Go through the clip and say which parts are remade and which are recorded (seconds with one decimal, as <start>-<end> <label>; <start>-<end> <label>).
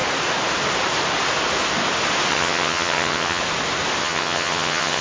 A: 0.0-2.3 recorded; 2.3-3.4 remade; 3.4-4.0 recorded; 4.0-5.0 remade